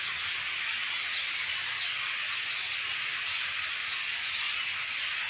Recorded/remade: recorded